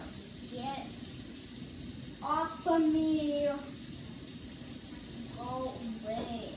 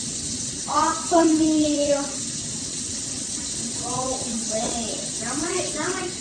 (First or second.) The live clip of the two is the first